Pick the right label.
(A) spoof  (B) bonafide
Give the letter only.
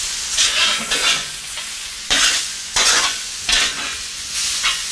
A